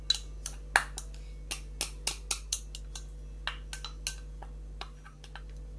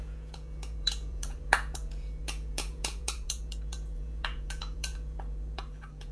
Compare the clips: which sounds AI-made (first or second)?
second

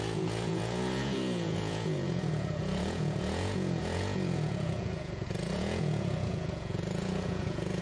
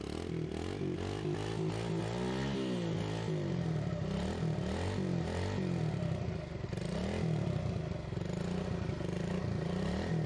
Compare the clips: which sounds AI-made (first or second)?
first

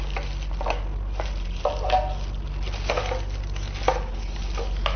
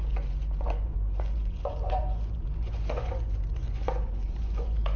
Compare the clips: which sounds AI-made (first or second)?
second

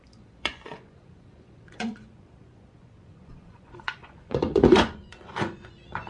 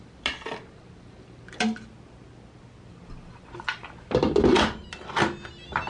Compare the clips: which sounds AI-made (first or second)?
first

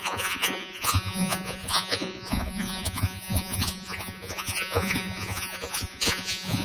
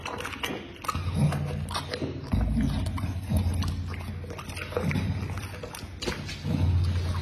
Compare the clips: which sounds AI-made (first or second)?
first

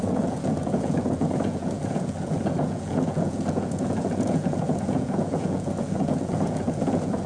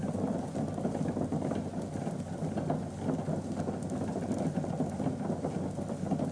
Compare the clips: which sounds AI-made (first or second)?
first